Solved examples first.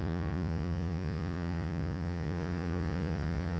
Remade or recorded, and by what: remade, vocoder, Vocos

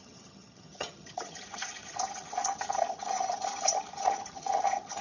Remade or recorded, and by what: remade, vocoder, HiFi-GAN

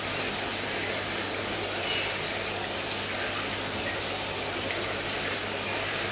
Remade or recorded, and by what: recorded